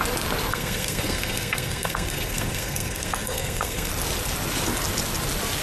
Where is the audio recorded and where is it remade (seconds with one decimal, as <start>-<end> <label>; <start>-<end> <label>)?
0.0-0.5 recorded; 0.5-3.9 remade; 3.9-5.6 recorded